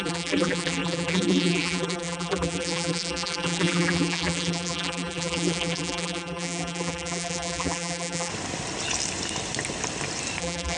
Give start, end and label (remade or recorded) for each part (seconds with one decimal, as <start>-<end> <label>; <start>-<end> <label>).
0.0-8.3 remade; 8.3-10.4 recorded; 10.4-10.8 remade